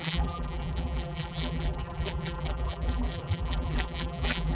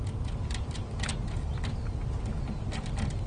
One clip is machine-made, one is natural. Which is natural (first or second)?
second